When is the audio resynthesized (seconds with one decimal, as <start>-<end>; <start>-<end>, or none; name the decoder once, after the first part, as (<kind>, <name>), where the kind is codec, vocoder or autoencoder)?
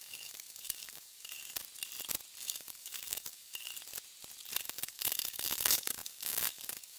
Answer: 0.0-1.6 (codec, DAC); 2.4-3.7; 4.6-7.0